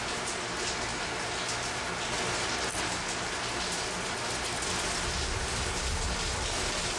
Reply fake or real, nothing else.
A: real